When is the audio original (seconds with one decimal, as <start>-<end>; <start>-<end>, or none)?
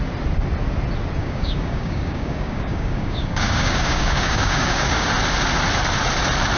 0.0-1.2; 5.1-6.6